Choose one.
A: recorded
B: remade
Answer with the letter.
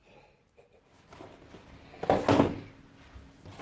A